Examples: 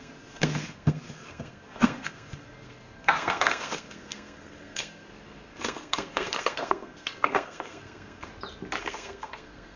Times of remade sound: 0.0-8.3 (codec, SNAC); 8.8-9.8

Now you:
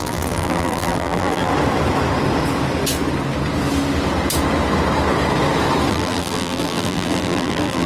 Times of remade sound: 0.0-1.5 (vocoder, BigVGAN v2); 5.9-7.9

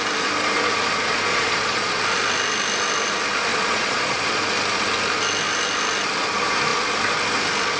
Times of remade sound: 1.3-2.0 (vocoder, Vocos); 3.5-4.4

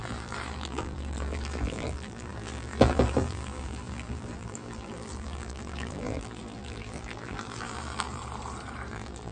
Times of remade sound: 0.0-8.2 (vocoder, BigVGAN v2); 8.9-9.3

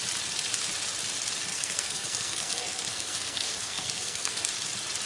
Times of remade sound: 1.5-4.5 (codec, SNAC)

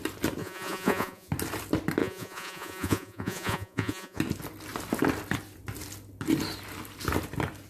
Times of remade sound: 0.4-1.3 (vocoder, Vocos); 2.0-4.2

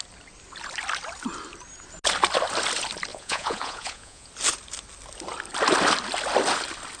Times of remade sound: 3.1-4.3 (vocoder, Vocos)

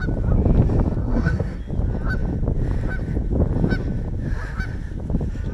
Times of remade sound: 1.0-1.6 (codec, SNAC)